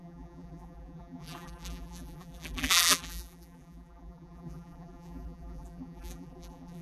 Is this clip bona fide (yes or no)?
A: no